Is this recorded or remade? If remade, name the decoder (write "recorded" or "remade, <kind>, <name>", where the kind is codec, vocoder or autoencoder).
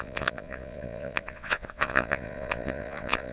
remade, vocoder, Vocos